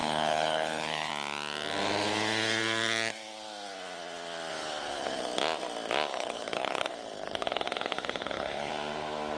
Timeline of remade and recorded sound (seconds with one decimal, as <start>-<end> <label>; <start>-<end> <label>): 0.0-1.1 remade; 1.1-4.5 recorded; 4.5-5.2 remade; 5.2-6.1 recorded; 6.1-8.7 remade; 8.7-9.4 recorded

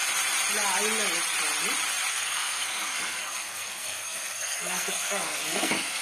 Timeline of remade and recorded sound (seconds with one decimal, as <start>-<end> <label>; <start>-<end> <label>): 0.0-2.1 recorded; 2.1-6.0 remade

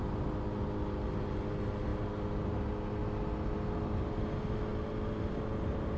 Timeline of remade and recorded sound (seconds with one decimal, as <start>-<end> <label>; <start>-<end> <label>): 0.0-6.0 recorded

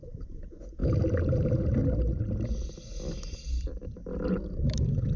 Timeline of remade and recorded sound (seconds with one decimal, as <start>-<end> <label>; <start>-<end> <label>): 0.0-0.8 remade; 0.8-1.4 recorded; 1.4-1.8 remade; 1.8-3.6 recorded; 3.6-5.2 remade

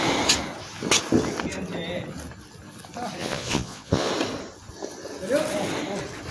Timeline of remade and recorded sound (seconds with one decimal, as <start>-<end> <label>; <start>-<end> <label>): 0.0-3.2 recorded; 3.2-4.1 remade; 4.1-6.3 recorded